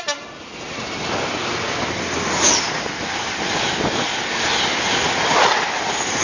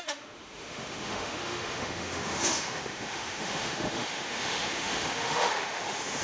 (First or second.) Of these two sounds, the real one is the first